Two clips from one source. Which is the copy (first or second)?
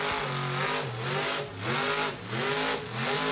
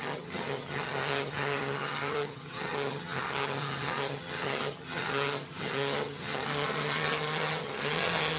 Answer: second